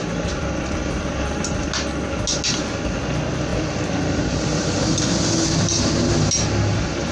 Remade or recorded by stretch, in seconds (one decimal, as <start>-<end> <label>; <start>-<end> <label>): 0.0-1.5 remade; 1.5-3.5 recorded; 3.5-5.1 remade; 5.1-7.1 recorded